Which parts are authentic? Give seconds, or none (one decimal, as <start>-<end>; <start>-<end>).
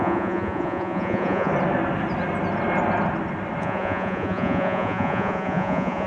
1.5-3.6